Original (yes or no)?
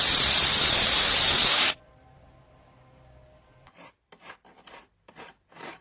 no